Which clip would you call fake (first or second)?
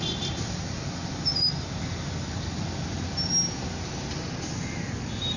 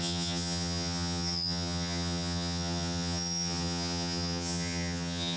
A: second